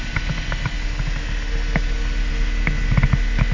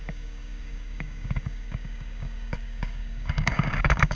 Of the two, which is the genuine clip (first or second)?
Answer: first